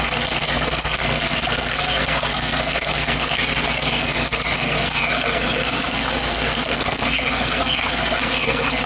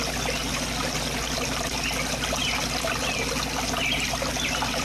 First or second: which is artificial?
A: first